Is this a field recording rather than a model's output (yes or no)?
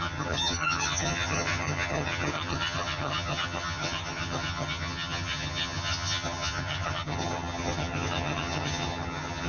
no